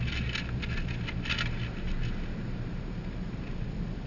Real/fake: real